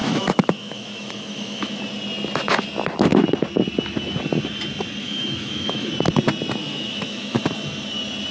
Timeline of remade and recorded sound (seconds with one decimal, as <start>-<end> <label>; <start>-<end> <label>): 0.0-1.8 remade; 1.8-5.0 recorded; 5.0-5.9 remade; 5.9-6.6 recorded; 6.6-7.4 remade; 7.4-8.3 recorded